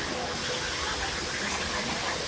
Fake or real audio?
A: real